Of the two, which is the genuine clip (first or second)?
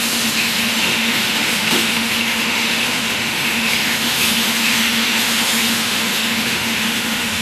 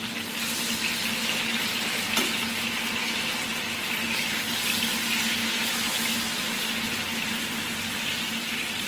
second